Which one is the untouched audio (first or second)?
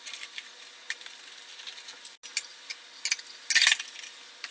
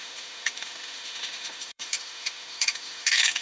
first